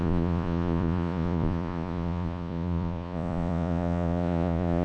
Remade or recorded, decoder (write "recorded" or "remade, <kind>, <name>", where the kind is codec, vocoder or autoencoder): remade, vocoder, Vocos